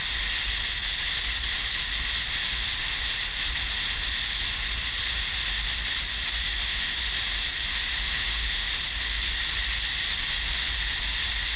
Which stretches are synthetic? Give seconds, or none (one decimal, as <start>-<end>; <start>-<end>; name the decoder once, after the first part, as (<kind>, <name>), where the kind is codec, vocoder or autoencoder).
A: 2.4-3.0 (autoencoder, DAC-VAE); 6.5-7.0; 7.9-8.8